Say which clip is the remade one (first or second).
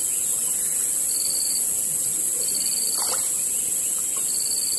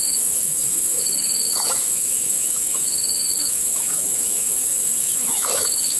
second